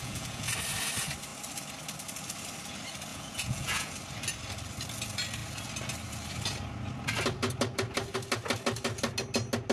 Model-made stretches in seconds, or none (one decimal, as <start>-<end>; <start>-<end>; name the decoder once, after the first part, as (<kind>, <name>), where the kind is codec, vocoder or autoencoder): 0.0-0.5 (vocoder, Vocos); 3.1-3.9